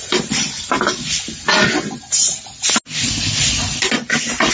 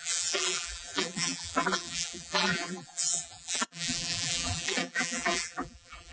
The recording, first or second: first